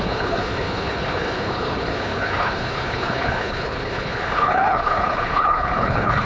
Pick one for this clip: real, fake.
fake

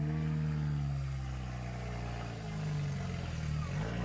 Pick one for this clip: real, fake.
real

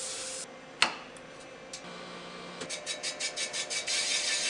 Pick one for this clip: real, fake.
real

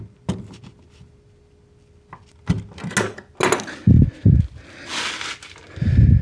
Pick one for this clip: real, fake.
real